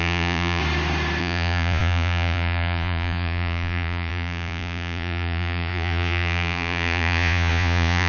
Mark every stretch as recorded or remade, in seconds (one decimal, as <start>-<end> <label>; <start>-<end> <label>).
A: 0.0-0.6 remade; 0.6-1.2 recorded; 1.2-8.1 remade

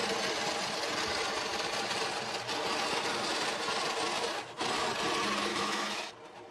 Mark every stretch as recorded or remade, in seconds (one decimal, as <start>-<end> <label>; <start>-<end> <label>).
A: 0.0-5.5 recorded; 5.5-6.1 remade; 6.1-6.5 recorded

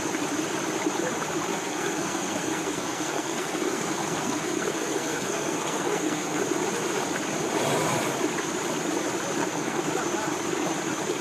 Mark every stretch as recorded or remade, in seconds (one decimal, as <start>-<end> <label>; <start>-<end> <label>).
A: 0.0-1.5 recorded; 1.5-6.4 remade; 6.4-9.4 recorded; 9.4-9.9 remade; 9.9-11.2 recorded

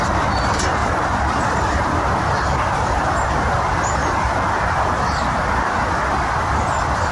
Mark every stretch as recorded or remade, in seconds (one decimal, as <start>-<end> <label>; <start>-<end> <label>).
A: 0.0-0.8 recorded; 0.8-3.3 remade; 3.3-4.0 recorded; 4.0-5.1 remade; 5.1-7.1 recorded

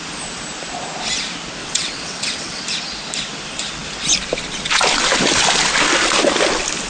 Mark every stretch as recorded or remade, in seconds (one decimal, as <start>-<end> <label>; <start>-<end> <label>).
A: 0.0-1.6 recorded; 1.6-2.6 remade; 2.6-6.9 recorded

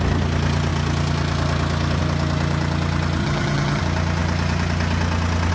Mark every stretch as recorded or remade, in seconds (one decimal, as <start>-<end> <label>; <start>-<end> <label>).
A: 0.0-3.2 recorded; 3.2-3.8 remade; 3.8-5.5 recorded

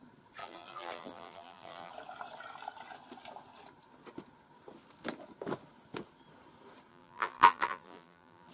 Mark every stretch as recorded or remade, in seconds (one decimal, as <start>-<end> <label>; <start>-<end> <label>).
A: 0.0-0.4 recorded; 0.4-1.9 remade; 1.9-6.9 recorded; 6.9-8.5 remade

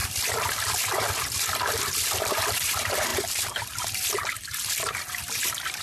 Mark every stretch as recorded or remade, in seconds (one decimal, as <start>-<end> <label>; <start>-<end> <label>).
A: 0.0-5.8 remade